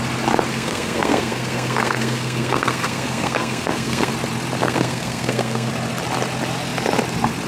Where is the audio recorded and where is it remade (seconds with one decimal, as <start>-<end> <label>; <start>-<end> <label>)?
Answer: 0.0-0.5 recorded; 0.5-4.1 remade; 4.1-4.6 recorded; 4.6-5.7 remade; 5.7-7.5 recorded

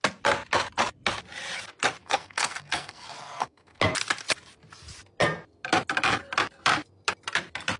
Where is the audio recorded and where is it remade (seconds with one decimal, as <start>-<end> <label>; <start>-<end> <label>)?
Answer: 0.0-2.0 recorded; 2.0-3.8 remade; 3.8-7.8 recorded

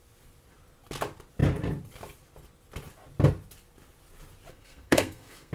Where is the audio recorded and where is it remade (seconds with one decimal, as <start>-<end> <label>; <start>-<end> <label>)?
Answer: 0.0-4.5 recorded; 4.5-5.5 remade

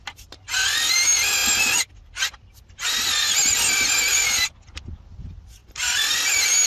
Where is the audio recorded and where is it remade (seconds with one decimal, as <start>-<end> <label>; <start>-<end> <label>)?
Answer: 0.0-6.7 recorded

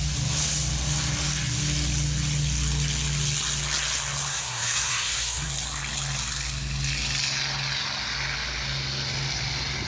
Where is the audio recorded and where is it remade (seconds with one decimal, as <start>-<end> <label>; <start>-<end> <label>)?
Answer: 0.0-4.3 recorded; 4.3-5.5 remade; 5.5-9.9 recorded

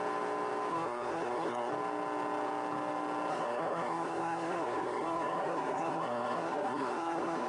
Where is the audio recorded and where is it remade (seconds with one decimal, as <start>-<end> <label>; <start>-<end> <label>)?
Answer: 0.0-0.7 recorded; 0.7-1.7 remade; 1.7-3.3 recorded; 3.3-7.5 remade

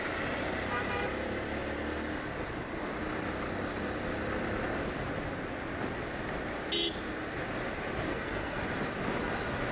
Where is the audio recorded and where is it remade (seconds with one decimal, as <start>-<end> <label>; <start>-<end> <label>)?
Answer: 0.0-8.1 recorded; 8.1-8.6 remade; 8.6-9.7 recorded